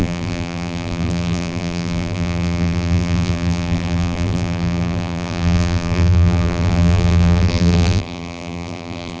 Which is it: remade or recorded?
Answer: remade